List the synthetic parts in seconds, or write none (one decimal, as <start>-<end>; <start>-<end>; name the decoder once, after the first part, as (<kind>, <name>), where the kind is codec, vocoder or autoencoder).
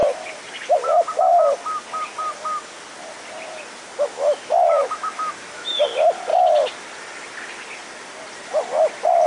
4.1-5.8 (autoencoder, DAC-VAE)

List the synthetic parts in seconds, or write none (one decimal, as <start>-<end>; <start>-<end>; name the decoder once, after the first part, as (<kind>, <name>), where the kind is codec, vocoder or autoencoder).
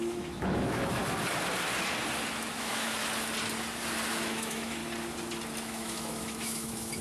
0.0-1.0 (autoencoder, DAC-VAE); 2.5-3.0; 4.1-4.8; 5.6-7.0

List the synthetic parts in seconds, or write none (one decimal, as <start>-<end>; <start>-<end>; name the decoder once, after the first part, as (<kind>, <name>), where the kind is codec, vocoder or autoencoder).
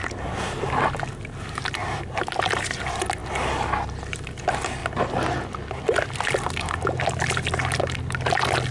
none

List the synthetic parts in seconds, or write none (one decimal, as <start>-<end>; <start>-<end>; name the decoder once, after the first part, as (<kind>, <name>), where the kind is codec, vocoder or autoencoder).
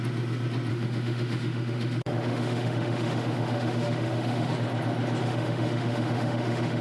0.7-4.5 (autoencoder, DAC-VAE); 5.2-6.8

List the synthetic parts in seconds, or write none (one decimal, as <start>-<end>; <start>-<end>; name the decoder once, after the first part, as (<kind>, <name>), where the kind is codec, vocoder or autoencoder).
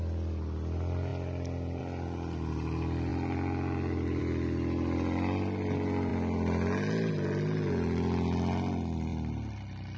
none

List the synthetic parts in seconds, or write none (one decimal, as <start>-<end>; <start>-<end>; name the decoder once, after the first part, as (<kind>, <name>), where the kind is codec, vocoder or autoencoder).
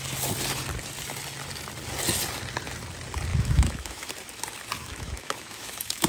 3.3-4.1 (autoencoder, DAC-VAE); 4.8-6.1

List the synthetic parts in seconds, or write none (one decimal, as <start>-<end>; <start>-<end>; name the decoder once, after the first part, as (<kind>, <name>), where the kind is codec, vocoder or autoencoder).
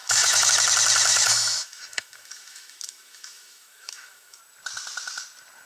0.0-0.5 (autoencoder, DAC-VAE); 1.1-4.4